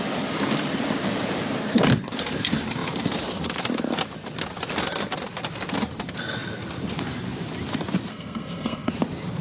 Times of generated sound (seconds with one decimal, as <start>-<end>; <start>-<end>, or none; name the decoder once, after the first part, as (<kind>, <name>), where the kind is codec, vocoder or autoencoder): 8.1-8.9 (codec, SNAC)